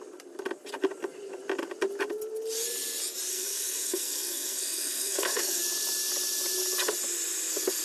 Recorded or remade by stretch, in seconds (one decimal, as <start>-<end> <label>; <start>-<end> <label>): 0.0-3.3 recorded; 3.3-5.6 remade; 5.6-7.8 recorded